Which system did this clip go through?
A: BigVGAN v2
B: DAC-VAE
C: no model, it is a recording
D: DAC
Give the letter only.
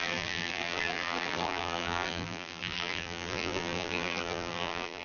A